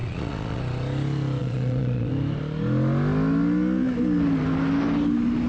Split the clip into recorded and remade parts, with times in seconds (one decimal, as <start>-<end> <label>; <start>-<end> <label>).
0.0-0.6 remade; 0.6-1.4 recorded; 1.4-2.1 remade; 2.1-5.5 recorded